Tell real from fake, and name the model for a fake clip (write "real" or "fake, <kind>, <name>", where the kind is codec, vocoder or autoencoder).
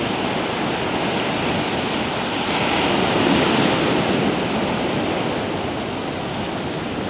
real